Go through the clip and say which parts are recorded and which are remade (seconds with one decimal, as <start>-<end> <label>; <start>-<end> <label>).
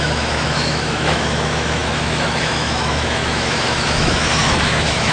0.0-5.1 remade